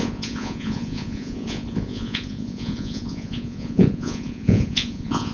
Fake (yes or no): yes